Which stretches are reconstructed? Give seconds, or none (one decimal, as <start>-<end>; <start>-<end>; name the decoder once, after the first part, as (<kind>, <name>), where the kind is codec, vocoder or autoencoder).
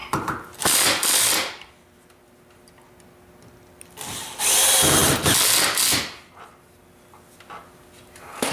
none